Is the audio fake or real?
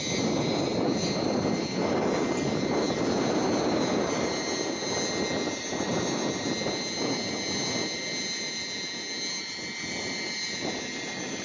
real